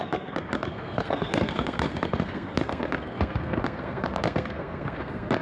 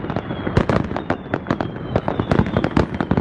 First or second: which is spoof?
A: first